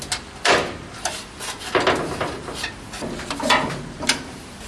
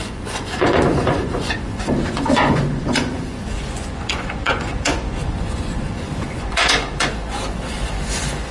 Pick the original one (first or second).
first